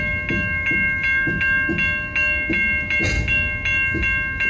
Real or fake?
real